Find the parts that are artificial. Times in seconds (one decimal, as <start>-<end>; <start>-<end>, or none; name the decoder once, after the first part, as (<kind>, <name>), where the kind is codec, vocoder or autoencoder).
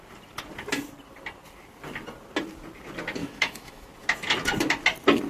3.2-3.9 (autoencoder, DAC-VAE)